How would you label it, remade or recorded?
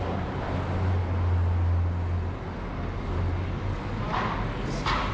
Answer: recorded